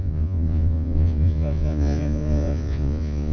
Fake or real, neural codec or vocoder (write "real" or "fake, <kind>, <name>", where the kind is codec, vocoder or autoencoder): fake, vocoder, Vocos